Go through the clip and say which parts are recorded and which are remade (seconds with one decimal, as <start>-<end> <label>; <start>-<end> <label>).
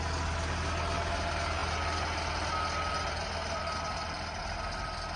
0.0-5.2 recorded